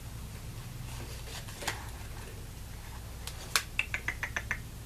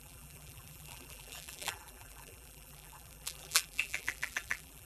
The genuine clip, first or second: first